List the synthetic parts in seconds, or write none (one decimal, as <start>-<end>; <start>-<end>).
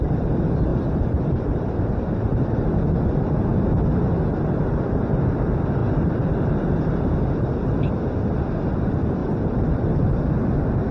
0.7-2.7; 5.8-7.0; 9.2-10.0